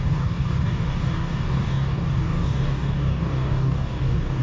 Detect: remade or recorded remade